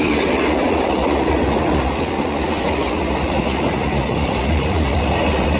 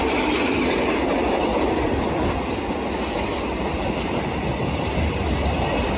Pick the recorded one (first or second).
second